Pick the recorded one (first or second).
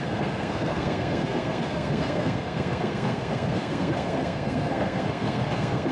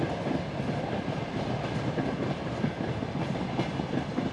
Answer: second